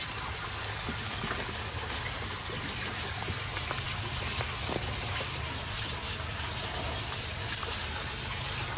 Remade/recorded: recorded